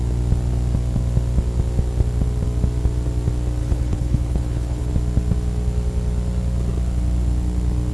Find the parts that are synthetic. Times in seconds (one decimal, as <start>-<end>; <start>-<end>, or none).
3.6-4.9